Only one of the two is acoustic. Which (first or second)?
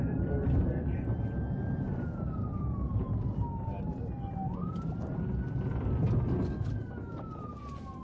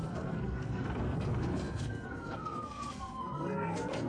first